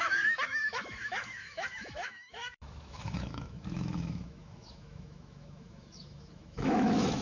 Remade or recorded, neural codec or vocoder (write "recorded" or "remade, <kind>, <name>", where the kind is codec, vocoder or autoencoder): remade, autoencoder, DAC-VAE